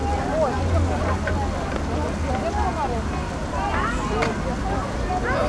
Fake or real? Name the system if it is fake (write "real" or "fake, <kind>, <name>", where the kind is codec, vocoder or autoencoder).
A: real